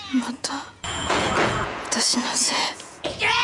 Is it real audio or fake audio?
fake